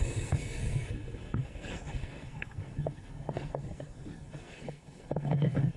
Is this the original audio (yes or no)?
no